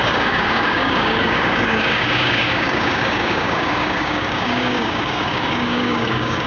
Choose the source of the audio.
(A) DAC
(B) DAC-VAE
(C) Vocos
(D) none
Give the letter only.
A